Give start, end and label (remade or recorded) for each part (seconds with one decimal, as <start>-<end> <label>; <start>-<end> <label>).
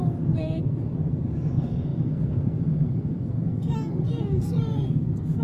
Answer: 0.0-5.4 remade